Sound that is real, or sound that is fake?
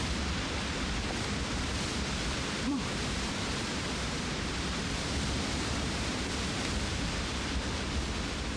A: fake